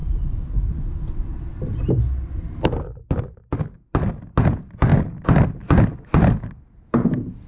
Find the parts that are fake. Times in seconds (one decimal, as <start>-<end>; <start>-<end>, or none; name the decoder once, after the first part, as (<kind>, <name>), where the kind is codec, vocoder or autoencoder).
none